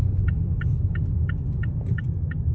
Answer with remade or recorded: recorded